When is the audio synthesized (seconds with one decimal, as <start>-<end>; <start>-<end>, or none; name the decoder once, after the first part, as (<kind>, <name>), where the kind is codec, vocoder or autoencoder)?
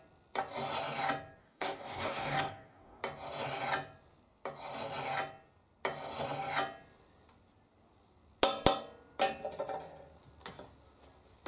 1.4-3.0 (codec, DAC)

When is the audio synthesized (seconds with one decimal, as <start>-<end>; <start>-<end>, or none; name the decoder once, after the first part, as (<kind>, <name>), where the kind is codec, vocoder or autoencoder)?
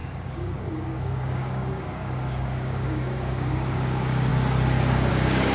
0.0-4.3 (codec, DAC); 5.1-5.5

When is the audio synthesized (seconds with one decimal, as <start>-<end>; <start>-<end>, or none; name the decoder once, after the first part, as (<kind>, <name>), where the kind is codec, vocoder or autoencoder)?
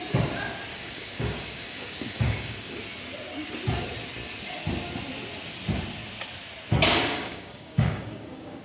0.7-2.8 (codec, DAC); 6.9-8.6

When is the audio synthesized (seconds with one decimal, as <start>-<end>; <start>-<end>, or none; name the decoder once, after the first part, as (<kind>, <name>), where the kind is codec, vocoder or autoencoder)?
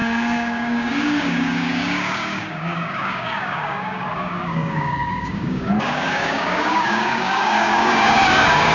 0.0-8.7 (codec, DAC)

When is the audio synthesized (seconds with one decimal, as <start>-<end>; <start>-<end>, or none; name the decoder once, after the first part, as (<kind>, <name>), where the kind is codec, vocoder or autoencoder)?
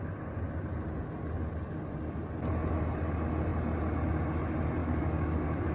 4.8-5.7 (codec, DAC)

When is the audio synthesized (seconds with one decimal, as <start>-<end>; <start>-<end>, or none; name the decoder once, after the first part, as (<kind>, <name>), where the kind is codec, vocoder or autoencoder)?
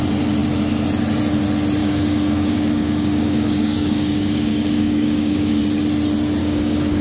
1.8-5.6 (codec, DAC); 6.4-7.0